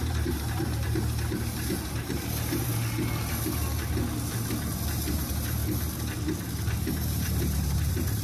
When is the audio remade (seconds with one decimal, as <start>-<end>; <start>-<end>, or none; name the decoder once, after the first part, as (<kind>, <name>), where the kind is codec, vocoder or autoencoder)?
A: 0.0-2.7 (vocoder, BigVGAN v2); 5.1-5.6; 6.9-8.2